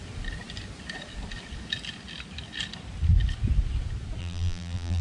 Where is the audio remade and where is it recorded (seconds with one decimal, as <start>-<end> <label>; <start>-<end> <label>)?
0.0-4.2 recorded; 4.2-5.0 remade

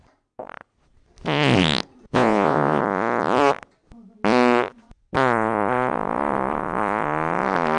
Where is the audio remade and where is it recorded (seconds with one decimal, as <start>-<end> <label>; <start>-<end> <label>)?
0.0-2.1 recorded; 2.1-2.8 remade; 2.8-7.8 recorded